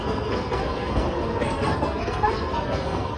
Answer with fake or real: fake